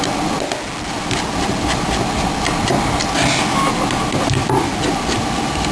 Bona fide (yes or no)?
yes